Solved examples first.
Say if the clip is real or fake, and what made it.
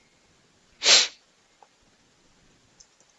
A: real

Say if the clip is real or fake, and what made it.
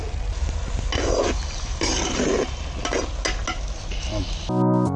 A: real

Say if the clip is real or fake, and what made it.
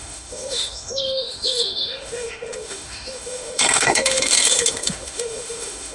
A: fake, autoencoder, DAC-VAE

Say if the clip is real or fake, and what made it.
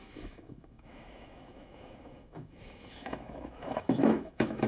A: fake, autoencoder, DAC-VAE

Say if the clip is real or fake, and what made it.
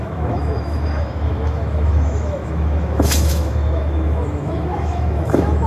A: fake, autoencoder, DAC-VAE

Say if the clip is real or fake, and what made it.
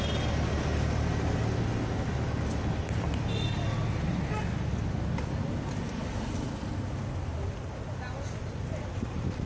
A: real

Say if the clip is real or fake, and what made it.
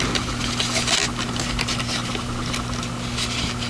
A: real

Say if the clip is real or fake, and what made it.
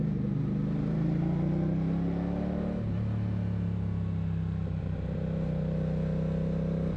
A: real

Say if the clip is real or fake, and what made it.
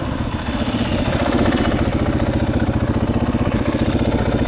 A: real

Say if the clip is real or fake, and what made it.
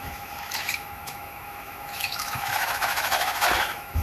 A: fake, autoencoder, DAC-VAE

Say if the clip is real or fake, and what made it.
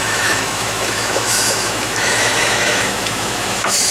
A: fake, autoencoder, DAC-VAE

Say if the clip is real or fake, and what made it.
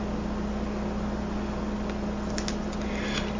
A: real